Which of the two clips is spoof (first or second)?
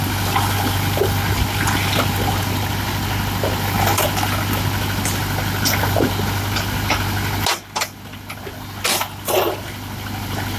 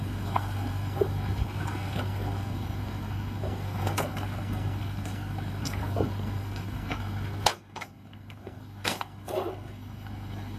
second